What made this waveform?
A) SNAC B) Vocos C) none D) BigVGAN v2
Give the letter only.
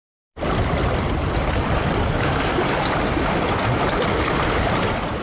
D